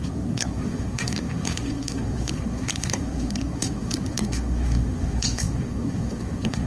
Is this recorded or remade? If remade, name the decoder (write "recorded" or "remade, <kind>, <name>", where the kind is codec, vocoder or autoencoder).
remade, codec, SNAC